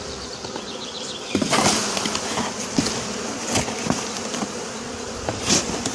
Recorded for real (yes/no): no